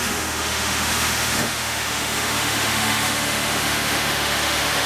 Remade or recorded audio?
remade